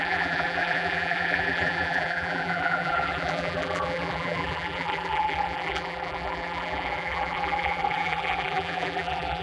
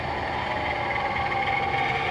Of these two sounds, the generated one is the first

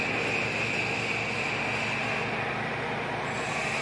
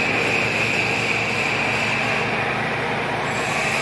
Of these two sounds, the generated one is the second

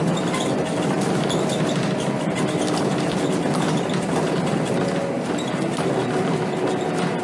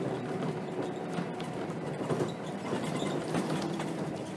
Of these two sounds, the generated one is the second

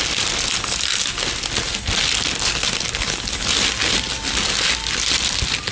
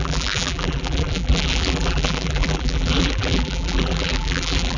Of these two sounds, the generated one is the second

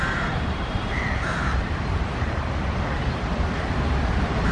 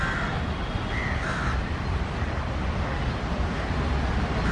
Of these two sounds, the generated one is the first